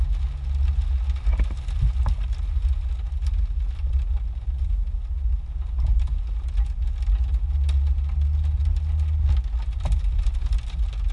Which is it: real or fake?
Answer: real